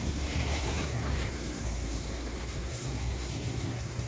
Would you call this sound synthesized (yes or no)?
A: yes